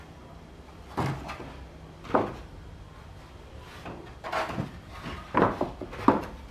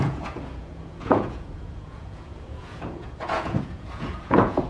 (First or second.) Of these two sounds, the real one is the first